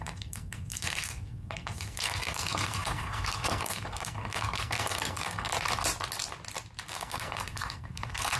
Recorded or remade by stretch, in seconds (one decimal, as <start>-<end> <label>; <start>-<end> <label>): 0.0-5.5 remade; 5.5-6.9 recorded; 6.9-8.4 remade